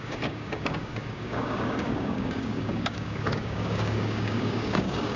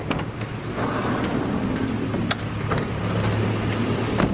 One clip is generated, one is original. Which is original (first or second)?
second